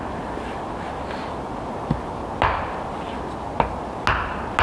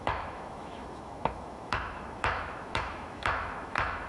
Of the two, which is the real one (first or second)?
first